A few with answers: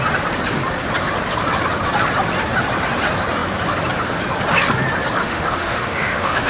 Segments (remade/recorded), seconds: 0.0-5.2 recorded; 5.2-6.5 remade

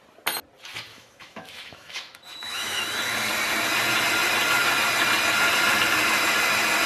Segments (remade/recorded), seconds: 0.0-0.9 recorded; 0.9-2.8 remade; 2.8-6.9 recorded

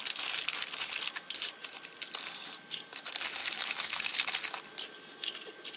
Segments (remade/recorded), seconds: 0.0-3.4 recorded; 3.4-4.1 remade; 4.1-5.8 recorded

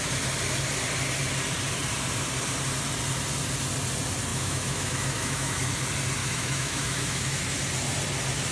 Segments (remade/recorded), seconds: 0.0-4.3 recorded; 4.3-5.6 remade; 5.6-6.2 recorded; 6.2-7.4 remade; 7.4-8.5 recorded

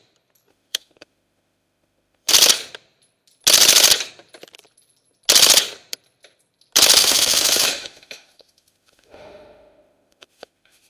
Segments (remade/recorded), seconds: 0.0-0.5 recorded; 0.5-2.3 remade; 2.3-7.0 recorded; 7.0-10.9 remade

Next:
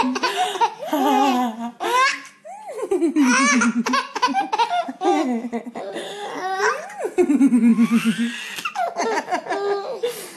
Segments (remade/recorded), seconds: 0.0-10.4 recorded